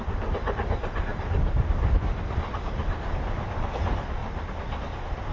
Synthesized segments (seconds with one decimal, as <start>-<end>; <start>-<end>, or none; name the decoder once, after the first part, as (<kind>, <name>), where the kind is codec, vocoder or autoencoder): none